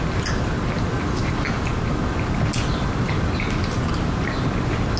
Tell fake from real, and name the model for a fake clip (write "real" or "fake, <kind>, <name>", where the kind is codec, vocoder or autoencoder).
real